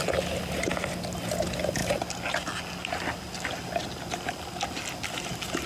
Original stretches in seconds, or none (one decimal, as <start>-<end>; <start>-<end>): 0.0-5.7